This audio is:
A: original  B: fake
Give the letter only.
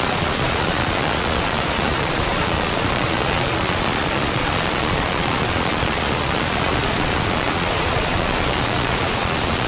B